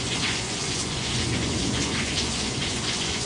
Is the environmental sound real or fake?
fake